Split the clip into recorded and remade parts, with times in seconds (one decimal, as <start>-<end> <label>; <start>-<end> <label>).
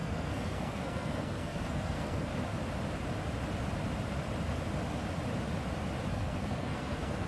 0.0-2.3 remade; 2.3-6.1 recorded; 6.1-7.3 remade